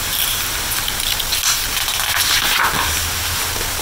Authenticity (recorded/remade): recorded